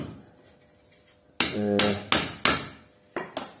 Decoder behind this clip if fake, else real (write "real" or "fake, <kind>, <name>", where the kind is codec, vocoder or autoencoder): real